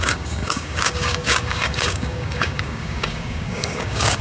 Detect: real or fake fake